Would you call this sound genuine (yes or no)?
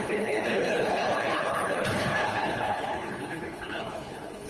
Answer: no